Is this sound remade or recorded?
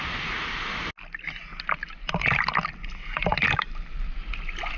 recorded